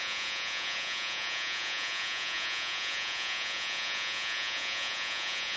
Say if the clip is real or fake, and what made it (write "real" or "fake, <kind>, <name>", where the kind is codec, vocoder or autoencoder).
fake, vocoder, Vocos